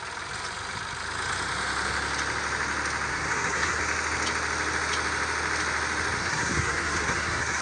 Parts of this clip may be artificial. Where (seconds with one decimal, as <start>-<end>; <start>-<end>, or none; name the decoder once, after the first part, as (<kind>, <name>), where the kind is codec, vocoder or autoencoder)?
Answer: 3.1-3.8 (codec, SNAC); 6.2-7.6